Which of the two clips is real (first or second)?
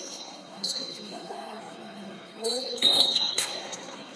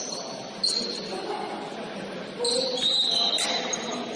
second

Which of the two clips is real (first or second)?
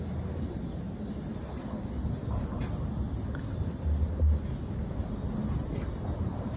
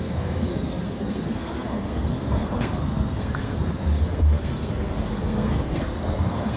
first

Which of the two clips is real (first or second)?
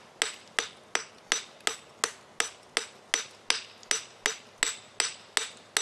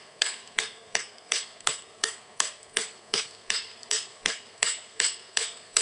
first